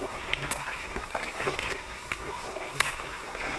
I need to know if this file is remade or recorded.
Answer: remade